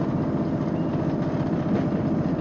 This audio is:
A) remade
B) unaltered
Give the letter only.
B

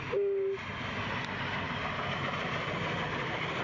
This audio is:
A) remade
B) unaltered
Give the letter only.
B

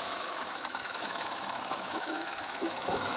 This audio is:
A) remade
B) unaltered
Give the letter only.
A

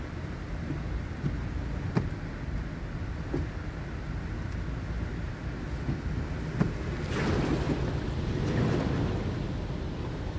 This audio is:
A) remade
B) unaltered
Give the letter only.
B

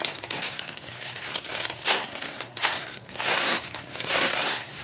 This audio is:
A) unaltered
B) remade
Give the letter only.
B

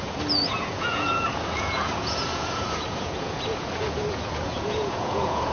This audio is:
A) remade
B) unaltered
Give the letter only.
A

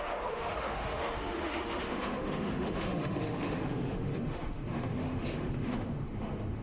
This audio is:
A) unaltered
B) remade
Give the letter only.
B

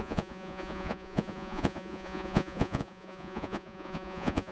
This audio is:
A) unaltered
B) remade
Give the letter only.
B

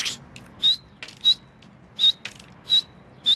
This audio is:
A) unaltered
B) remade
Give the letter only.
A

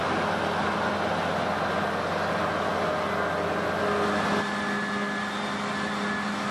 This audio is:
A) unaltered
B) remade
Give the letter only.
A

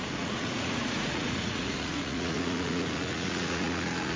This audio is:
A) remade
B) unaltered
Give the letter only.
A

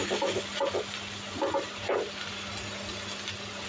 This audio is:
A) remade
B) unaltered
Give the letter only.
B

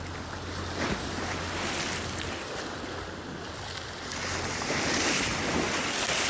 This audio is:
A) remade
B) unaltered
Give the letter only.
B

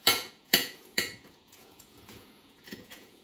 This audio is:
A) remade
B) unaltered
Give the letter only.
A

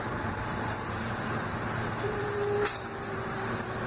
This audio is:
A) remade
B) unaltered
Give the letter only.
A